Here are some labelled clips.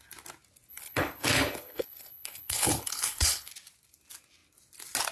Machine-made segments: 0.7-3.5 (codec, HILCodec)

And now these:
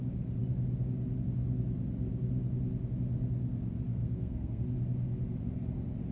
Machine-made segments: 3.9-4.6 (codec, SNAC)